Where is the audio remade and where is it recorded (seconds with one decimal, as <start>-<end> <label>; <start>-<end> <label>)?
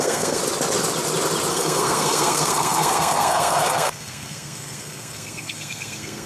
0.0-0.4 remade; 0.4-1.5 recorded; 1.5-6.3 remade